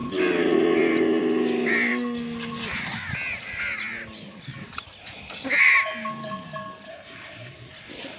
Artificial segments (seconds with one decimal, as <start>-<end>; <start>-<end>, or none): 6.9-7.7